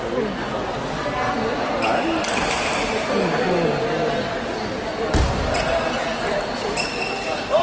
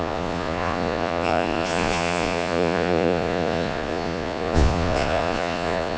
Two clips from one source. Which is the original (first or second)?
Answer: first